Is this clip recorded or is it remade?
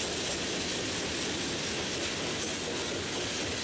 recorded